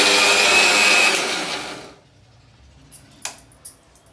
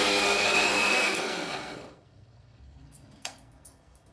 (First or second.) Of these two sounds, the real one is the first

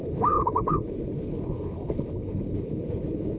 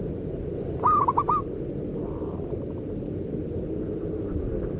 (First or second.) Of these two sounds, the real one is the second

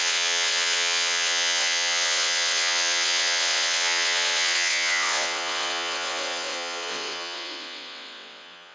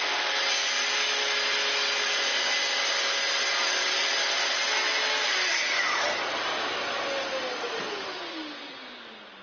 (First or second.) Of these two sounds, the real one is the second